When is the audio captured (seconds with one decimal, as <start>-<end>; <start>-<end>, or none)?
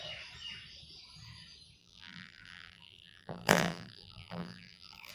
0.0-1.8